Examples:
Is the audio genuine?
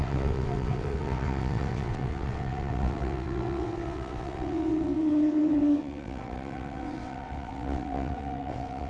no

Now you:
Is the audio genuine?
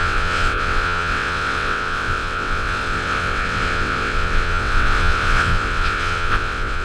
no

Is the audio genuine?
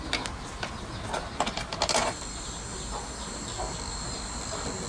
yes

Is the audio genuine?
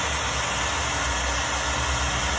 yes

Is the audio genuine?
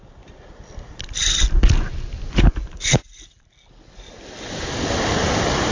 yes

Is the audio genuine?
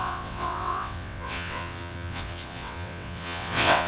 no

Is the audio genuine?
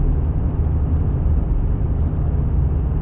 yes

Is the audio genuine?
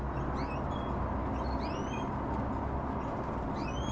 yes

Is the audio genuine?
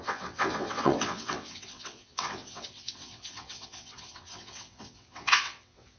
no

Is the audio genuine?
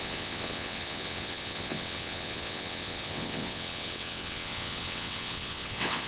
no